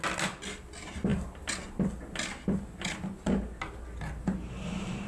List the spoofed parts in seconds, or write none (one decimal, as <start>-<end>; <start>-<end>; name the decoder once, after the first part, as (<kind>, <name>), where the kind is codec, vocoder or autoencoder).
none